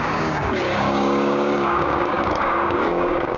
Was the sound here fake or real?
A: fake